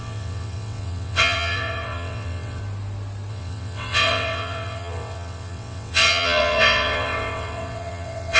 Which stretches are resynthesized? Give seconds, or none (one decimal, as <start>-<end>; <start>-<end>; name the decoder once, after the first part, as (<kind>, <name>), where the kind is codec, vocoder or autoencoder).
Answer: 0.0-2.6 (vocoder, WaveNeXt); 3.3-8.4